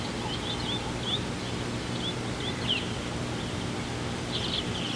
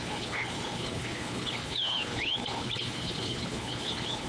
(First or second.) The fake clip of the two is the second